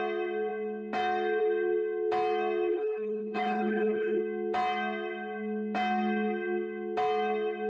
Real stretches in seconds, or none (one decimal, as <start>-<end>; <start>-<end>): 0.0-2.7; 4.2-7.7